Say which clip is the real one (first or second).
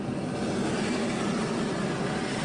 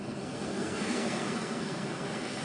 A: first